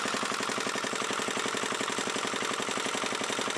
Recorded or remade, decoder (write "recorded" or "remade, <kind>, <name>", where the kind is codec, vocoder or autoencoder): recorded